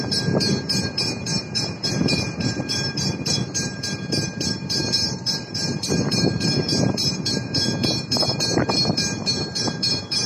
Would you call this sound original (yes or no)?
no